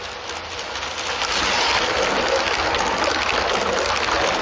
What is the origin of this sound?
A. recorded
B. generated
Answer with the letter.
A